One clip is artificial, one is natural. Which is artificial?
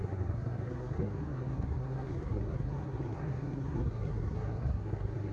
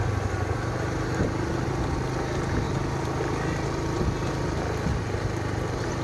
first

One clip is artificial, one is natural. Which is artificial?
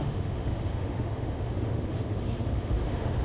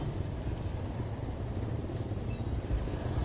first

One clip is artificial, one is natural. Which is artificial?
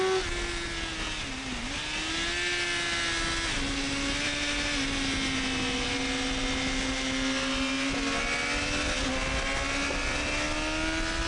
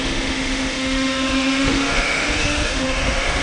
second